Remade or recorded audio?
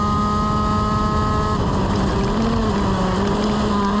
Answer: recorded